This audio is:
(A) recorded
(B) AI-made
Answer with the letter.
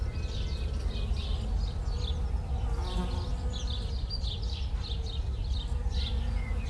A